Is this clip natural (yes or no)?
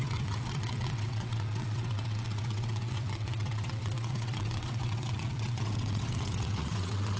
no